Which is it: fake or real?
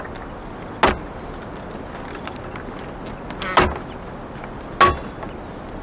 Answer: real